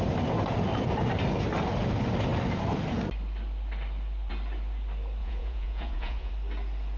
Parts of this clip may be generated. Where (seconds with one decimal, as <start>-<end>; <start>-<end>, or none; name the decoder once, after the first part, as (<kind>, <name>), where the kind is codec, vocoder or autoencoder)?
5.2-6.3 (vocoder, Vocos)